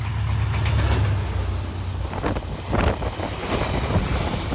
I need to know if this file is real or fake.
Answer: real